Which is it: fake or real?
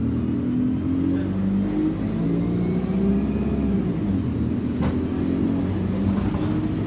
real